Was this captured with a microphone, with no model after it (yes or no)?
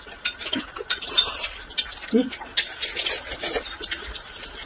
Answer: yes